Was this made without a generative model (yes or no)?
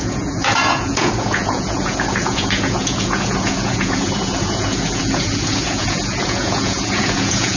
no